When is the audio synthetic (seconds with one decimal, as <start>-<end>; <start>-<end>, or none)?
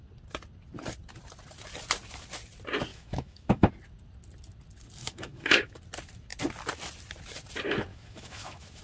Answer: 2.9-3.7; 5.0-5.8; 7.9-8.8